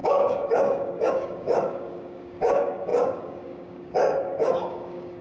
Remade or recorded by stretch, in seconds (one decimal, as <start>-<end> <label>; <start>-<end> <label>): 0.0-5.2 remade